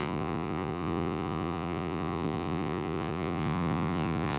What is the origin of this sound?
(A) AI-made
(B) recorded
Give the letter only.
A